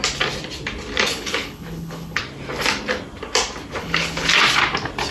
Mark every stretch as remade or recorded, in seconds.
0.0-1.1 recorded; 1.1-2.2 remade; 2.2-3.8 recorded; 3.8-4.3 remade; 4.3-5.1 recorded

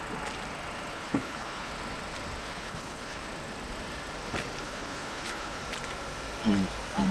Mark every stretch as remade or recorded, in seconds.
0.0-0.9 recorded; 0.9-1.7 remade; 1.7-2.4 recorded; 2.4-3.3 remade; 3.3-4.6 recorded; 4.6-5.6 remade; 5.6-7.1 recorded

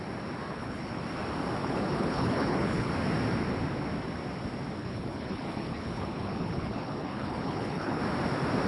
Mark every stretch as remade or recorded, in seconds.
0.0-0.5 recorded; 0.5-1.0 remade; 1.0-1.6 recorded; 1.6-2.9 remade; 2.9-4.8 recorded; 4.8-8.0 remade; 8.0-8.7 recorded